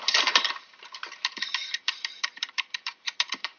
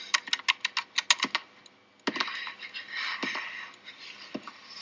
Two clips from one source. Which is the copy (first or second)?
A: first